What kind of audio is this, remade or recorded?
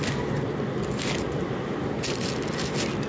recorded